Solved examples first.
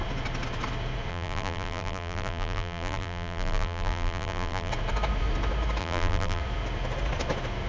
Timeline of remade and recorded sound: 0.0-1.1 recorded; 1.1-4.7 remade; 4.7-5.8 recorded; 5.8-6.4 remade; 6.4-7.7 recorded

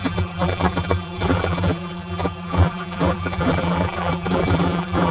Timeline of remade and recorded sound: 0.0-5.1 remade

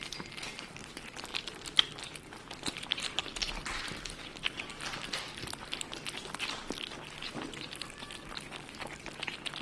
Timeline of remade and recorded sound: 0.0-1.3 recorded; 1.3-5.6 remade; 5.6-9.6 recorded